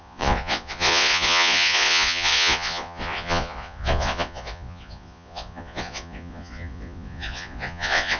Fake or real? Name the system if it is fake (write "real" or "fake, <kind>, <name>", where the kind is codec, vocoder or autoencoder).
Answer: fake, vocoder, Vocos